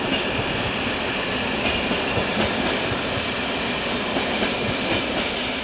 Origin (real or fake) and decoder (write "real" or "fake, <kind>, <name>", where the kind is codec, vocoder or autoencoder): real